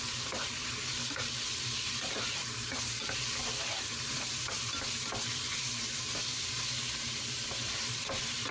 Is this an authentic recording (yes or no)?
no